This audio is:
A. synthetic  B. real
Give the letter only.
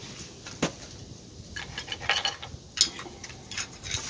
B